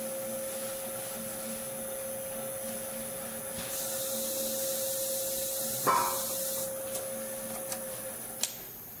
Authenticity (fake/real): real